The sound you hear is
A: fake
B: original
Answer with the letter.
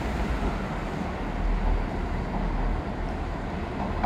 B